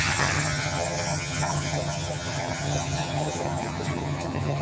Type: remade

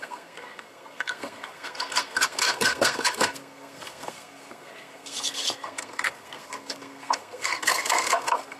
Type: remade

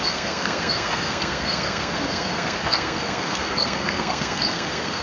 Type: remade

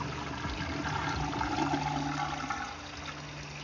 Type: recorded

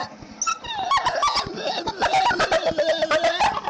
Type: recorded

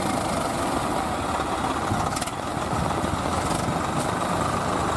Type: recorded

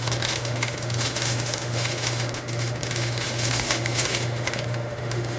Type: remade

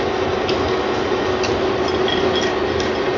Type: recorded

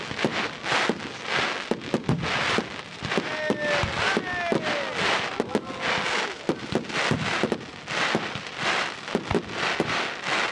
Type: recorded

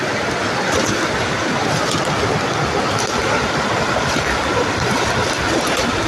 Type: recorded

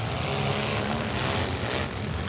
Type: recorded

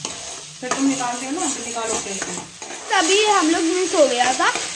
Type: recorded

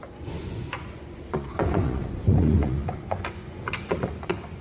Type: remade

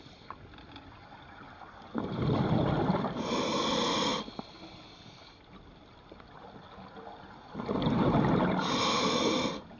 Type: recorded